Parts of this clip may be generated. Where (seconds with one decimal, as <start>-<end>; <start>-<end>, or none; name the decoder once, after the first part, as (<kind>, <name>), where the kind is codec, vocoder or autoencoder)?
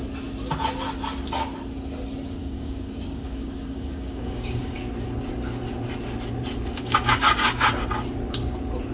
2.4-4.9 (codec, DAC); 6.8-7.7